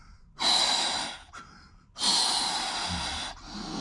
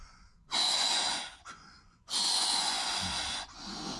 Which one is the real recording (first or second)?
first